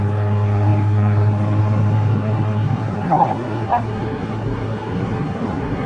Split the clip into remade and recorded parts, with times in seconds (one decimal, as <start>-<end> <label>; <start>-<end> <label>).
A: 0.0-5.9 remade